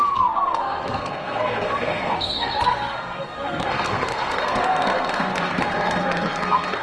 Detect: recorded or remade remade